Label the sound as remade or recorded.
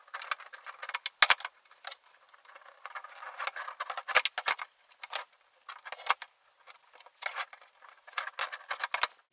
recorded